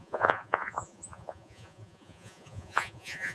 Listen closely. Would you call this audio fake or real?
fake